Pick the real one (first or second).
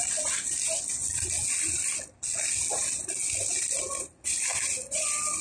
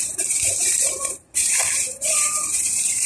first